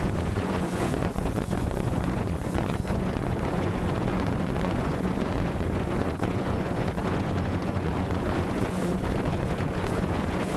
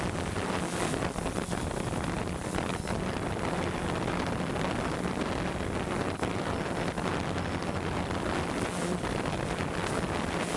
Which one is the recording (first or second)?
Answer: second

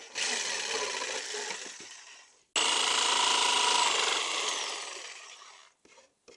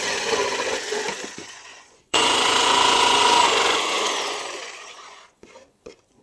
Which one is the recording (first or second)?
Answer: first